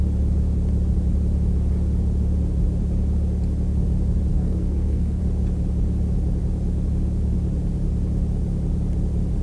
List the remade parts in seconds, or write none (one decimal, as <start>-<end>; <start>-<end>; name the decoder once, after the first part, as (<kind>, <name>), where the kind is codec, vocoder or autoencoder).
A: 4.3-5.2 (codec, SNAC)